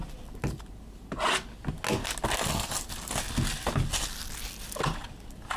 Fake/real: real